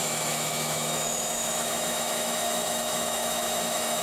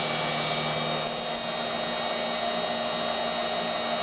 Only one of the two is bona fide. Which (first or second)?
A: second